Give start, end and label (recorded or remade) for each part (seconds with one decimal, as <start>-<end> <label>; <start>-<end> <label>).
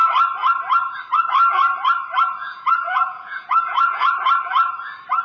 0.0-2.4 recorded; 2.4-4.1 remade; 4.1-5.2 recorded